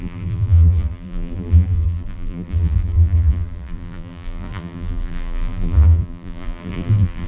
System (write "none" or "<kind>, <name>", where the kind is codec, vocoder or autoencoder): vocoder, BigVGAN v2